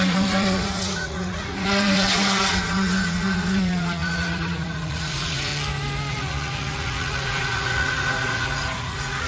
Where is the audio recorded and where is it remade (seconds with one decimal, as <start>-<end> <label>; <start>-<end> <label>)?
0.0-5.5 remade; 5.5-6.1 recorded; 6.1-9.3 remade